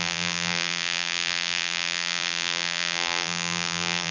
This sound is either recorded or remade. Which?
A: remade